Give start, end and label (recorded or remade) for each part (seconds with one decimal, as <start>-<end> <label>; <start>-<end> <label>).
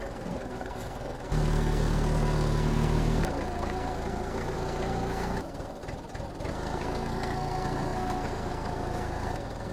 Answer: 0.0-5.8 remade; 5.8-6.5 recorded; 6.5-9.7 remade